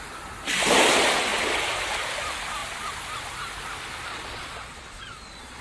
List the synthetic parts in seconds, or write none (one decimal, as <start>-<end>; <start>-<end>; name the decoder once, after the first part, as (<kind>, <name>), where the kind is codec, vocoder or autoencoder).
4.1-5.6 (vocoder, Vocos)